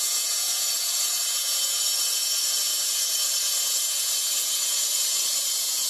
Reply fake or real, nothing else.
fake